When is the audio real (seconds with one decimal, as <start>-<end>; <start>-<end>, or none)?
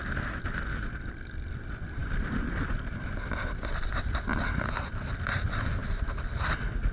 0.0-6.9